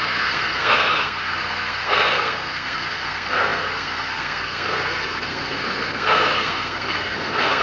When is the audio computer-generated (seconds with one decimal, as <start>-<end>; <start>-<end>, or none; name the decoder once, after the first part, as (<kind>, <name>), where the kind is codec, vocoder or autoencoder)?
0.0-7.6 (codec, SNAC)